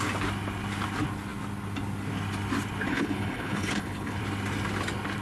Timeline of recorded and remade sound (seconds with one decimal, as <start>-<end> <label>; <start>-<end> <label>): 0.0-2.9 recorded; 2.9-4.2 remade; 4.2-5.2 recorded